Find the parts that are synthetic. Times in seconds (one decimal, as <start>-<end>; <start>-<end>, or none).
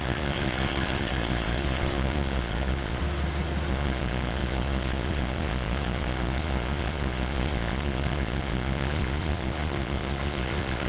0.0-3.0; 3.7-10.9